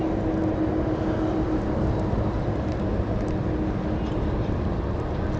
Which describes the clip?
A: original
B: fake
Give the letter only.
A